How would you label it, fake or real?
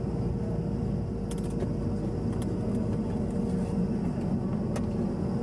real